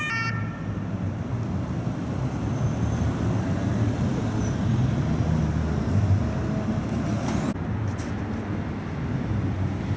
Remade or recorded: recorded